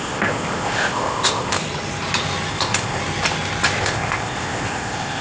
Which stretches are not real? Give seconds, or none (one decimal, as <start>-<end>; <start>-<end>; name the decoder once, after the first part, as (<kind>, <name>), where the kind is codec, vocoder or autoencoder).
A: 0.0-1.6 (codec, ZipCodec); 2.5-3.0; 3.8-5.2